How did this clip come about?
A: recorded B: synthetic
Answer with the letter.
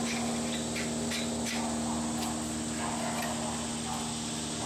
A